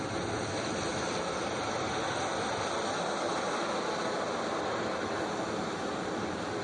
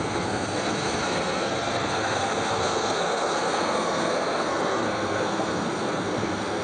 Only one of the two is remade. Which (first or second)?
second